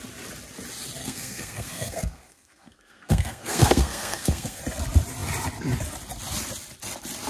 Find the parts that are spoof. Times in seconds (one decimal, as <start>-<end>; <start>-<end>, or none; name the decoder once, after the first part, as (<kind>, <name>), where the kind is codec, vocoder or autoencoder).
1.0-4.6 (codec, SNAC)